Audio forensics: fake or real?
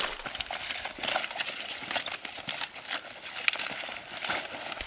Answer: real